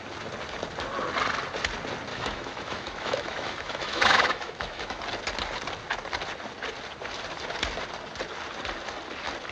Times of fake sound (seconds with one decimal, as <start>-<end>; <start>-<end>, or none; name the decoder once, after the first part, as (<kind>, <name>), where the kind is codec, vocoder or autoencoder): 2.1-5.0 (autoencoder, DAC-VAE)